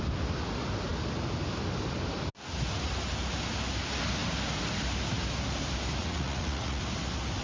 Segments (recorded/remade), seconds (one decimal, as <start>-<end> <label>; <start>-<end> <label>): 0.0-6.0 recorded; 6.0-6.8 remade; 6.8-7.4 recorded

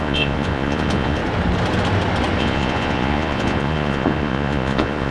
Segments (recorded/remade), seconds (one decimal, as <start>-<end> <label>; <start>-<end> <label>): 0.0-1.2 remade; 1.2-2.4 recorded; 2.4-5.1 remade

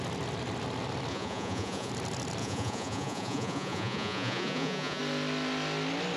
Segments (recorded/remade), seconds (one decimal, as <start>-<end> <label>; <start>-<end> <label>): 0.0-1.1 recorded; 1.1-1.9 remade; 1.9-2.4 recorded; 2.4-5.0 remade; 5.0-6.2 recorded

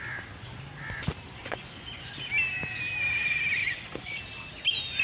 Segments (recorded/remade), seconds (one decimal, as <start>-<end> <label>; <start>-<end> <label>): 0.0-1.4 recorded; 1.4-2.1 remade; 2.1-3.6 recorded; 3.6-4.2 remade; 4.2-5.0 recorded

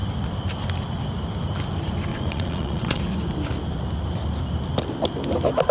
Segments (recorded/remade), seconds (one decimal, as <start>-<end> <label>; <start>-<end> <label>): 0.0-2.1 recorded; 2.1-3.0 remade; 3.0-5.7 recorded